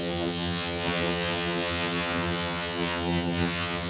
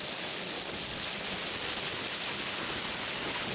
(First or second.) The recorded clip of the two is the second